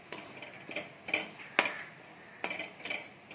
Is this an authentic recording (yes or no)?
yes